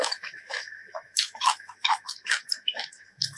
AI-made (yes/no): yes